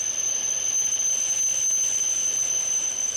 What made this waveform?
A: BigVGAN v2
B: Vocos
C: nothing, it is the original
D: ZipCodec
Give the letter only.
C